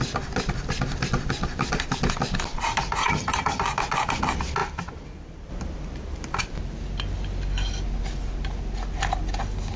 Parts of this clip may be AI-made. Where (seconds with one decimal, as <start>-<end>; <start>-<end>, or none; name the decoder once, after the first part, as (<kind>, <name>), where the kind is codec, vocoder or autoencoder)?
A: 3.0-3.6 (vocoder, HiFi-GAN)

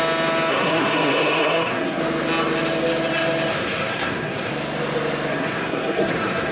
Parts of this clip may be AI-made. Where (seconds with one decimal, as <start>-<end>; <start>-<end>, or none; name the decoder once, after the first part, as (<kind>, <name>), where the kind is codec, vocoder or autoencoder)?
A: 0.5-2.0 (codec, SNAC); 3.5-4.5; 5.3-6.5

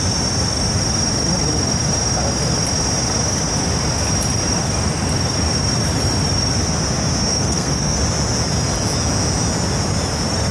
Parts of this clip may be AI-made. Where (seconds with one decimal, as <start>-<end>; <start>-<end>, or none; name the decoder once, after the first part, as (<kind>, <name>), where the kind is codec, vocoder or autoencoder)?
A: 7.3-8.0 (codec, SNAC)

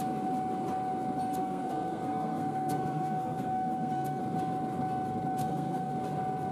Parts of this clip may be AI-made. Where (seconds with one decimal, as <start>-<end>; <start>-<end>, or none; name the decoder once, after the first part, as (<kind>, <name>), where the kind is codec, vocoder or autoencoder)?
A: 1.4-4.2 (codec, SNAC); 5.4-5.9

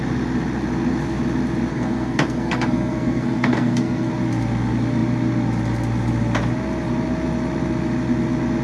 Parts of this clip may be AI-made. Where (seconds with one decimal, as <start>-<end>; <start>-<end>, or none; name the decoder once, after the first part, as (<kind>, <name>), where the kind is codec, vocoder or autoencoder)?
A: 1.7-4.1 (codec, SNAC)